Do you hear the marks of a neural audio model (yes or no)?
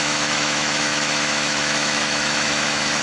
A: yes